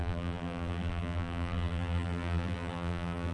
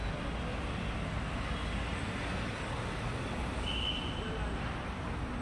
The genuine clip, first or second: second